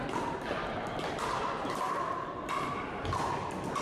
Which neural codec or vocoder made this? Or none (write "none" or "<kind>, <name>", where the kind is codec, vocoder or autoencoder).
none